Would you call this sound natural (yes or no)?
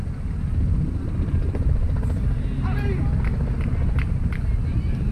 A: yes